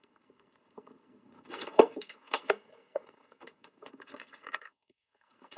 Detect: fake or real fake